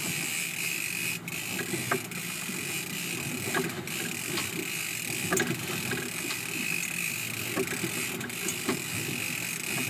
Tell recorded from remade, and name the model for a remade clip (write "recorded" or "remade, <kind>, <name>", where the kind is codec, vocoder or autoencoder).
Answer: recorded